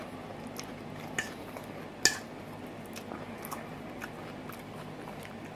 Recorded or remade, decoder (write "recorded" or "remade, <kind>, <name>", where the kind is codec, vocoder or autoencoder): recorded